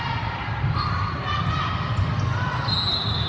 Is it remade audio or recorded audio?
recorded